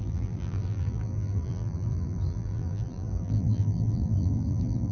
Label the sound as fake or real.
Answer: fake